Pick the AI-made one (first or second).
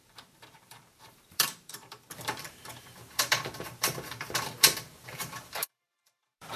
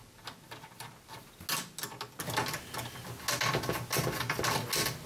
first